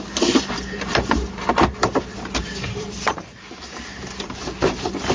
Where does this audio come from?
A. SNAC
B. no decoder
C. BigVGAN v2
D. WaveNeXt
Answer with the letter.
C